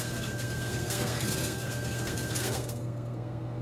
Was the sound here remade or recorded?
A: remade